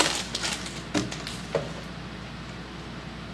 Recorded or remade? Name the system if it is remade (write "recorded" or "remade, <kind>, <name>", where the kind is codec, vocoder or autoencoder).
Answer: recorded